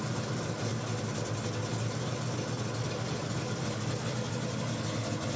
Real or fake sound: real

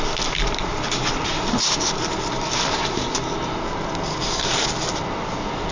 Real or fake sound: real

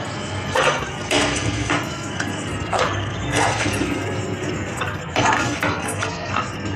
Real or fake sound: fake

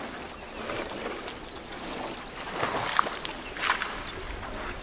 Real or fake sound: real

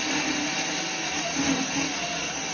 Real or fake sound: real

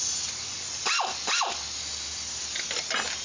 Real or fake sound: real